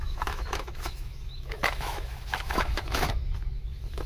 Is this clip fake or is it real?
fake